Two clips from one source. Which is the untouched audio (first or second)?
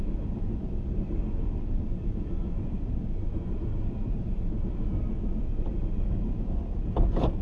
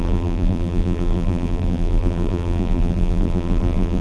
first